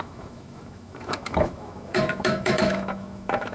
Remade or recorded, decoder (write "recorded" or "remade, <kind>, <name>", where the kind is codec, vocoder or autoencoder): remade, autoencoder, DAC-VAE